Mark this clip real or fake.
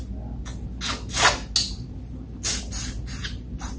real